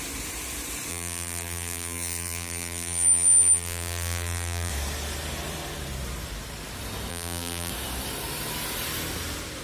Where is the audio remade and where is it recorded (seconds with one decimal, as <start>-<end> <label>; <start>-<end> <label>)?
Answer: 0.0-0.9 recorded; 0.9-4.7 remade; 4.7-7.1 recorded; 7.1-7.7 remade; 7.7-9.6 recorded